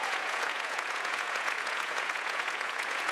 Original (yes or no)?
no